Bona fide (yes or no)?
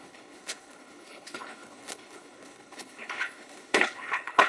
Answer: no